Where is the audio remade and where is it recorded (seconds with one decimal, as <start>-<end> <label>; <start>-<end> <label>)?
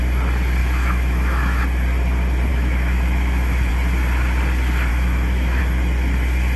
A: 0.0-0.6 recorded; 0.6-1.6 remade; 1.6-2.5 recorded; 2.5-3.7 remade; 3.7-4.9 recorded; 4.9-5.6 remade; 5.6-6.6 recorded